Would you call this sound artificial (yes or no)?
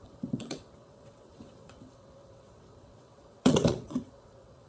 yes